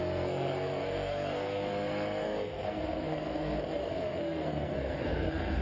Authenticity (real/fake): fake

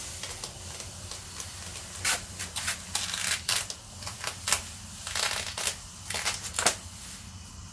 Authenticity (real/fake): real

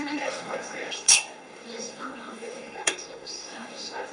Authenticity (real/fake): fake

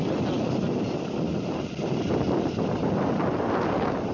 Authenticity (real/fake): real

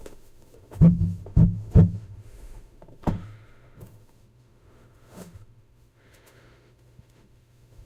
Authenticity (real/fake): fake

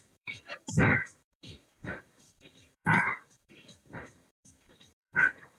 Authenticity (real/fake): fake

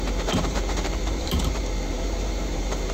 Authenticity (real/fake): fake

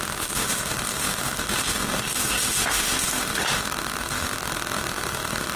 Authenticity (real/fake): fake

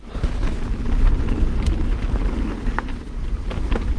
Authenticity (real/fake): real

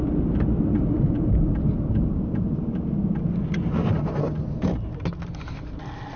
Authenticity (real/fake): real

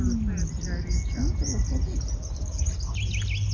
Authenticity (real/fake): real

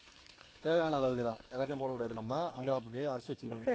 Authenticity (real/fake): fake